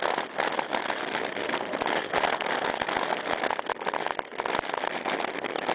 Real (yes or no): yes